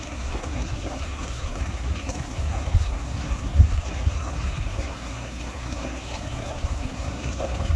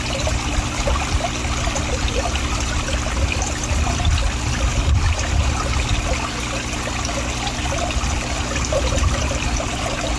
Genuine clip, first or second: second